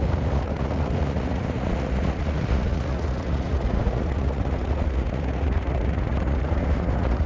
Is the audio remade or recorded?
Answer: remade